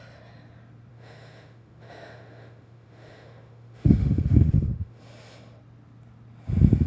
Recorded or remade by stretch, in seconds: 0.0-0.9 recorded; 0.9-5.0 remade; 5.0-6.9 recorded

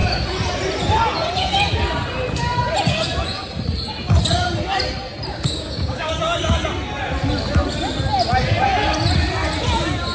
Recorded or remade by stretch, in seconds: 0.0-5.3 recorded; 5.3-6.1 remade; 6.1-10.1 recorded

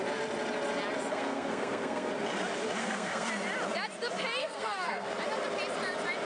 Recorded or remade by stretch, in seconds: 0.0-1.1 recorded; 1.1-2.1 remade; 2.1-2.8 recorded; 2.8-3.3 remade; 3.3-4.4 recorded; 4.4-5.1 remade; 5.1-6.2 recorded

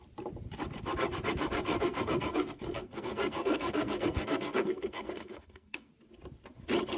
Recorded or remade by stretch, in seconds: 0.0-1.7 recorded; 1.7-5.9 remade; 5.9-7.0 recorded

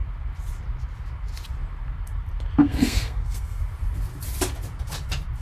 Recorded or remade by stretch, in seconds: 0.0-2.6 recorded; 2.6-3.6 remade; 3.6-5.4 recorded

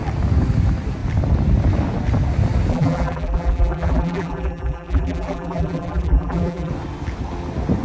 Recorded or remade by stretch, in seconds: 0.0-2.7 recorded; 2.7-6.7 remade; 6.7-7.8 recorded

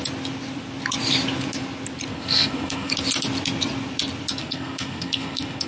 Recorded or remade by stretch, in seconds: 0.0-2.1 recorded; 2.1-2.9 remade; 2.9-4.4 recorded; 4.4-5.7 remade